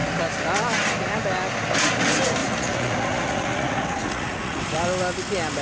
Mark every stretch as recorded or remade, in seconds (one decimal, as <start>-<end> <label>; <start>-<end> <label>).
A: 0.0-2.4 recorded; 2.4-4.6 remade; 4.6-5.6 recorded